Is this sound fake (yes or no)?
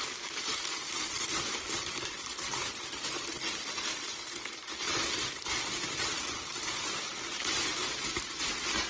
yes